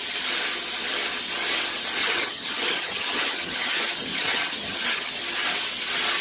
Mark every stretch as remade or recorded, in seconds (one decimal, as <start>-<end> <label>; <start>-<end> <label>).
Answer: 0.0-2.0 recorded; 2.0-5.1 remade; 5.1-6.2 recorded